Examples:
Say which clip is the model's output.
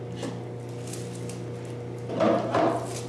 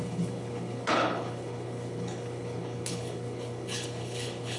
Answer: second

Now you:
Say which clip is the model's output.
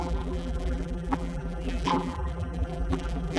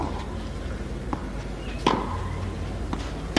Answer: first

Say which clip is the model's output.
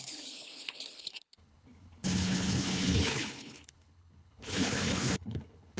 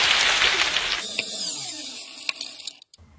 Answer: first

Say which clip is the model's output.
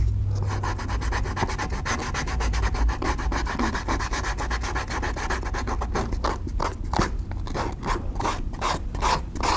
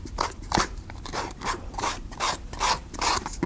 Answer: second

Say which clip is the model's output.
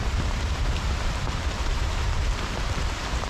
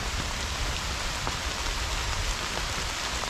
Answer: first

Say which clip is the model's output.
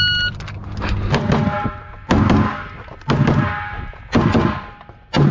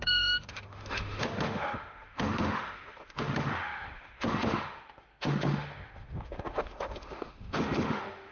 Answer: second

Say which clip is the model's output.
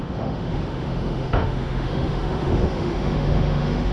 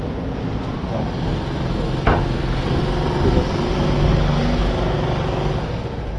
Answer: first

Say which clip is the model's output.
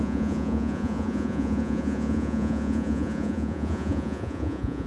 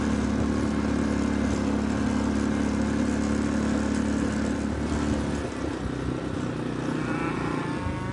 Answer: first